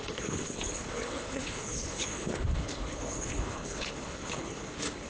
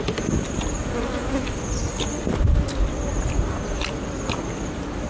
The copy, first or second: first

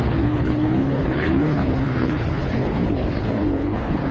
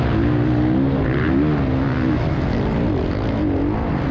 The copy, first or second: first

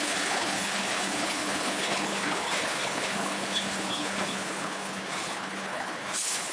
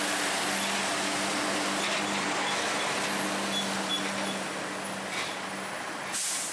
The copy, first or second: first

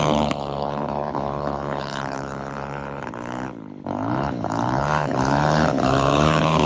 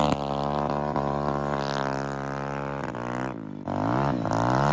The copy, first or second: first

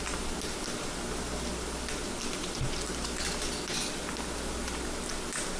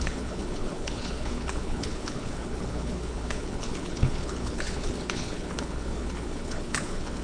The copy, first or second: second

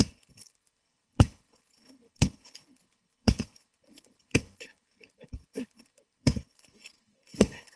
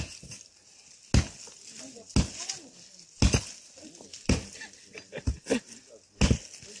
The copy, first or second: first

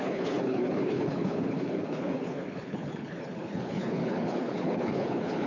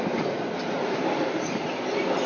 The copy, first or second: first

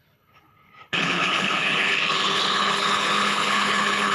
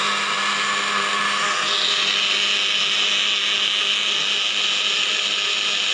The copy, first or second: first